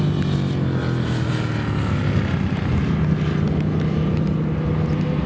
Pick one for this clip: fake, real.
real